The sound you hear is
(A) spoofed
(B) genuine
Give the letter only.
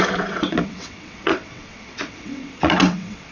A